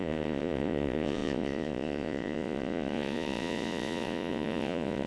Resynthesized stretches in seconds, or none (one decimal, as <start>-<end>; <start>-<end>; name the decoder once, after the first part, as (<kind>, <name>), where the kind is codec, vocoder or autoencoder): 0.0-5.1 (vocoder, Vocos)